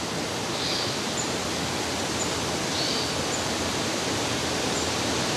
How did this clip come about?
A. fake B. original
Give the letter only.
B